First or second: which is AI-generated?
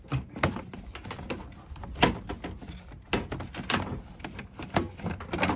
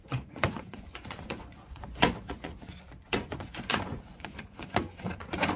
second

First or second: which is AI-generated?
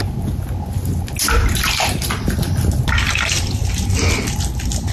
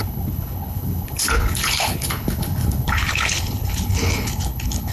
second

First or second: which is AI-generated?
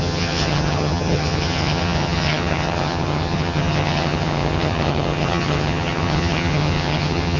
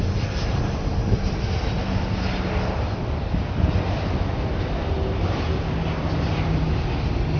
first